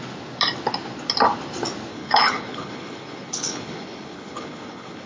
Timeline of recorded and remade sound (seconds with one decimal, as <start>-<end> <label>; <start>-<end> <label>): 0.0-1.9 recorded; 1.9-5.1 remade